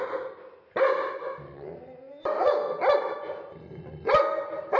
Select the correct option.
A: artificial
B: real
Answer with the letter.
B